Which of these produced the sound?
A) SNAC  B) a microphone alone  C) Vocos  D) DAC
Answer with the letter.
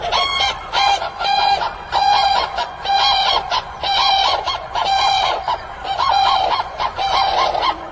C